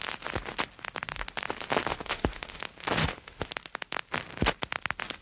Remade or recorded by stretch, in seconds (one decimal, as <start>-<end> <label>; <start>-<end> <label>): 0.0-1.9 recorded; 1.9-2.6 remade; 2.6-3.0 recorded; 3.0-3.5 remade; 3.5-5.2 recorded